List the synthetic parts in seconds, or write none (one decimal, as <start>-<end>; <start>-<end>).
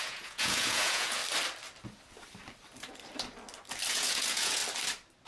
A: 0.0-1.2; 3.9-4.6